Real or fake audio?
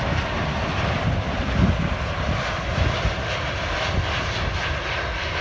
real